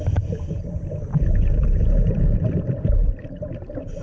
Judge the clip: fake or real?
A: real